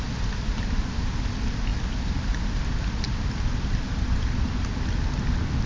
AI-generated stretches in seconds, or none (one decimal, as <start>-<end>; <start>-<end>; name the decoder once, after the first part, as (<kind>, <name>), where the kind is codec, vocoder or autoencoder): none